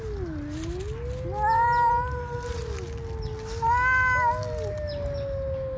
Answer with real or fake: real